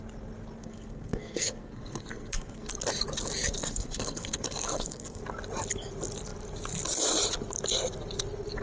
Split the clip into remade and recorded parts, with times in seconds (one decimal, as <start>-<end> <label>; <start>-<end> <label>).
0.0-0.6 recorded; 0.6-2.7 remade; 2.7-3.6 recorded; 3.6-5.2 remade; 5.2-8.6 recorded